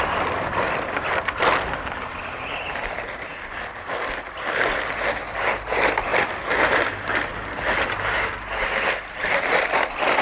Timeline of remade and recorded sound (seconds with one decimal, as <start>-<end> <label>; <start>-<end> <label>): 0.0-10.2 recorded